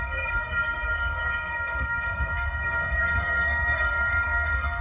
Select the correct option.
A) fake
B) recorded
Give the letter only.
A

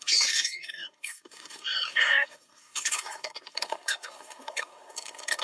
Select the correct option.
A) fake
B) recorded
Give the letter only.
A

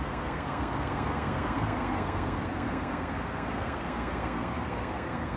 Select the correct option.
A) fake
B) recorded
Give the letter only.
A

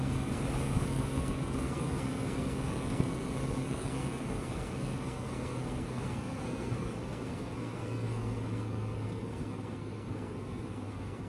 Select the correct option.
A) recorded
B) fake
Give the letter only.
B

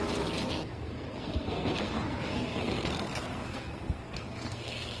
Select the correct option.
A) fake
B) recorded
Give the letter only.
A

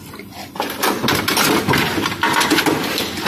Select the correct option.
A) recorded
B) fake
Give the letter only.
A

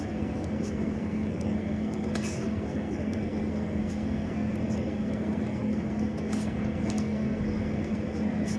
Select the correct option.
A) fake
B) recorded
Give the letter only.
A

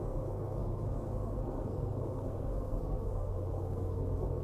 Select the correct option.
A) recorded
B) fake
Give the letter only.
B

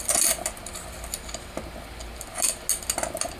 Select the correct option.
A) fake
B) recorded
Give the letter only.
B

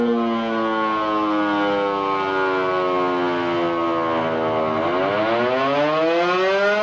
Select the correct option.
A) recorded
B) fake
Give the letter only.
A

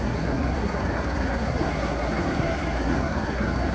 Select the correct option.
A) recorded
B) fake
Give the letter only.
B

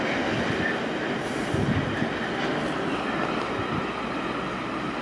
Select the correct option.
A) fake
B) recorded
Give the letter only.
B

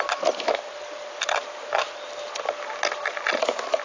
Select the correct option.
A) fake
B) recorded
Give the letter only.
B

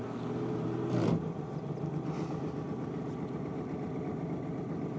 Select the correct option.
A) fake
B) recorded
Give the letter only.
B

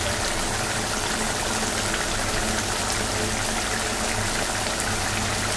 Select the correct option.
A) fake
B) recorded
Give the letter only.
B